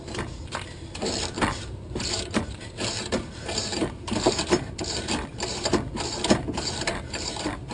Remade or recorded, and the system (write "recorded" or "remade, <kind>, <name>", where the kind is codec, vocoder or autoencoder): remade, vocoder, BigVGAN v2